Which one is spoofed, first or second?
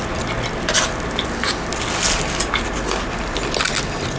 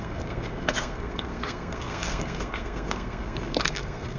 second